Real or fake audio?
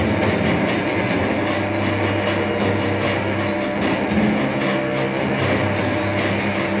real